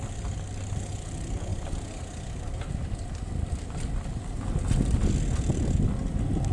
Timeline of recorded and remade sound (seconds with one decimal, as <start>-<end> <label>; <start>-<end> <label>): 0.0-6.5 recorded